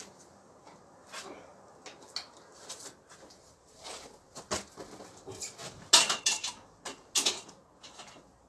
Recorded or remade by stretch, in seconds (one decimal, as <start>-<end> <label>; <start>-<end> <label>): 0.0-8.5 recorded